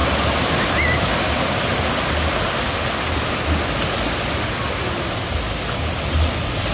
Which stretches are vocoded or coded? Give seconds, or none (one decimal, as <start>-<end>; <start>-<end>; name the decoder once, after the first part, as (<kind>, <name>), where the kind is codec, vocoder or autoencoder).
none